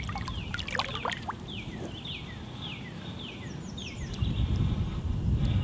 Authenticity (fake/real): real